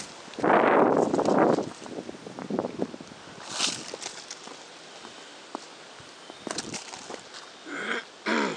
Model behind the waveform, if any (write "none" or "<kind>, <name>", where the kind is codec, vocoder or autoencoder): none